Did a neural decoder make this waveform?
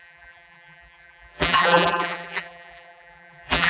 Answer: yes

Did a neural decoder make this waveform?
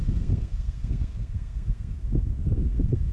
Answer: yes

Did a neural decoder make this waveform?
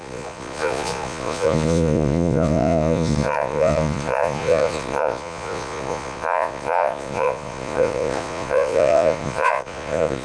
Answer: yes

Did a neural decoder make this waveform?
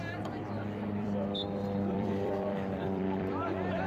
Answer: yes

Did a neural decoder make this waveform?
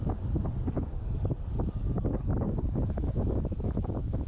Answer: yes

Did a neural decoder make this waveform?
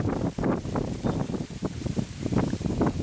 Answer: no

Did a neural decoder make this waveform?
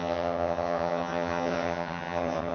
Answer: yes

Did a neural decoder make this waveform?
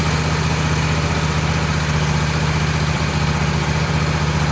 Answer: no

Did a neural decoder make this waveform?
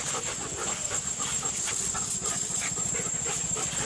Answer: no